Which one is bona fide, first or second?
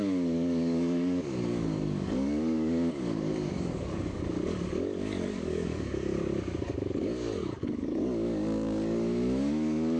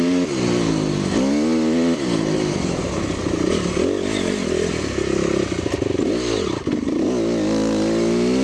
second